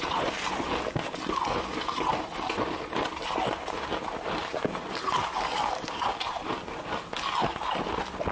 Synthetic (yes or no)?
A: no